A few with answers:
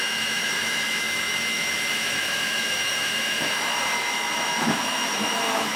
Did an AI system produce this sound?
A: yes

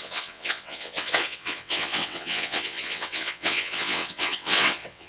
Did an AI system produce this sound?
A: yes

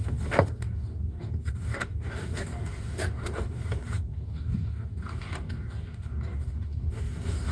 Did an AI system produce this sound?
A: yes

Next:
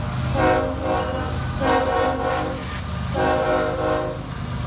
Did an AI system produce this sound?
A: no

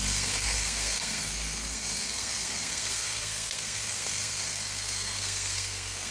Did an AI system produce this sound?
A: yes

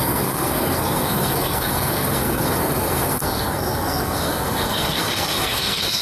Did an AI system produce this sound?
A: yes